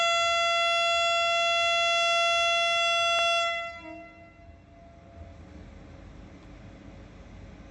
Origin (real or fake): real